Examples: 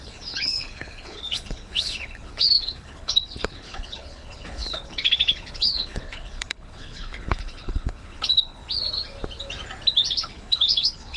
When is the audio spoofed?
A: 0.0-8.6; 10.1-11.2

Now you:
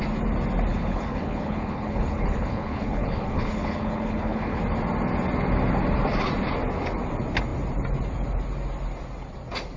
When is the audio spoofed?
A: 0.7-4.6

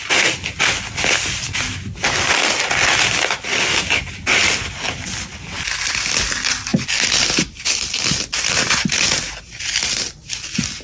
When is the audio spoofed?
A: none